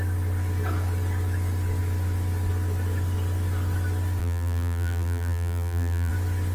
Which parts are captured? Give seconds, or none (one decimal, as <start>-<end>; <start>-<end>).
0.0-4.2; 6.1-6.5